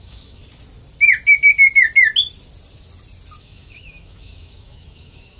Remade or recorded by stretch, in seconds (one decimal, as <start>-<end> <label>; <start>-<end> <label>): 0.0-0.4 remade; 0.4-3.4 recorded; 3.4-5.4 remade